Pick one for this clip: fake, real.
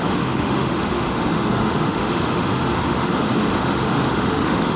fake